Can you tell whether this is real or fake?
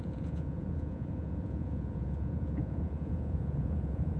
fake